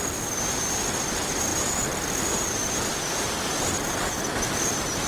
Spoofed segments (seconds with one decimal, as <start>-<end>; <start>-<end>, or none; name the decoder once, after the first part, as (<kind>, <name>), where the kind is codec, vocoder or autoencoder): none